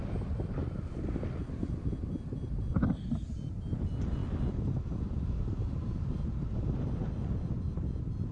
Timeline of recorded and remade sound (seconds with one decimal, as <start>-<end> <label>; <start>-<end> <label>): 0.0-8.3 recorded